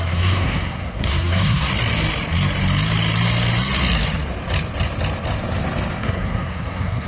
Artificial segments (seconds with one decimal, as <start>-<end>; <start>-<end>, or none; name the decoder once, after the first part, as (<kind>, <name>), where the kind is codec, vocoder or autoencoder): 0.0-1.7 (codec, SNAC); 6.0-7.1